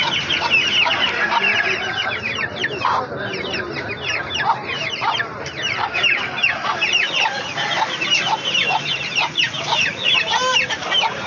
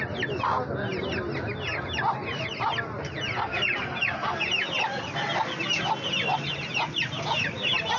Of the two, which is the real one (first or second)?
second